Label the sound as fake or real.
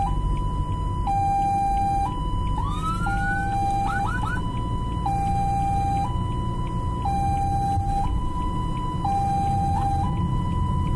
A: real